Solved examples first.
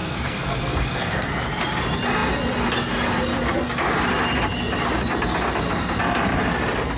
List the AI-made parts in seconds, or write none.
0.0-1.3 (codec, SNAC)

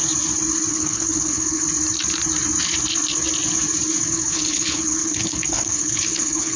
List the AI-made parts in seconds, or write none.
0.7-1.6 (codec, HILCodec); 4.1-6.6